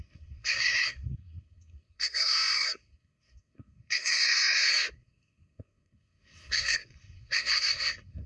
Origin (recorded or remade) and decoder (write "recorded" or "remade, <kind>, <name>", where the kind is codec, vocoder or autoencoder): remade, codec, SNAC